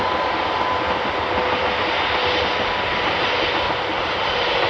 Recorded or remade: recorded